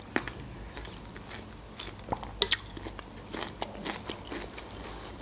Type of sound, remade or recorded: recorded